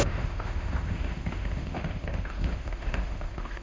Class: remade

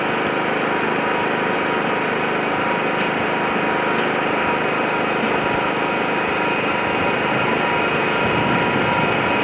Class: recorded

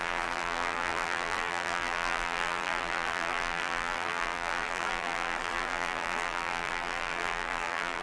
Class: remade